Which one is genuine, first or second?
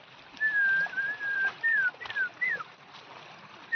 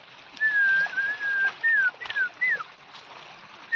second